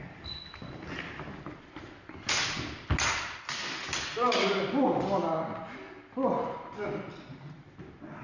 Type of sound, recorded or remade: recorded